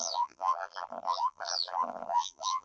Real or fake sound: fake